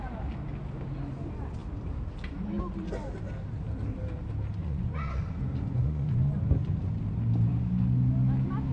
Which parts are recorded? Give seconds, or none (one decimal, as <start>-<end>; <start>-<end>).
0.0-4.6; 6.3-8.7